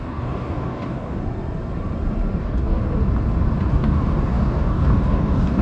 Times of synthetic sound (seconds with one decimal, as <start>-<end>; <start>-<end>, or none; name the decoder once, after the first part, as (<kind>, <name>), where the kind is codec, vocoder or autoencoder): 0.0-1.2 (codec, DAC); 2.4-2.8; 3.7-5.6